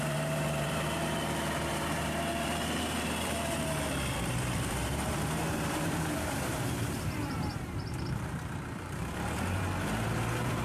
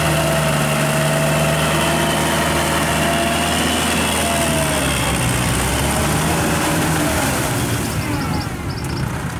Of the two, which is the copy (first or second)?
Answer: first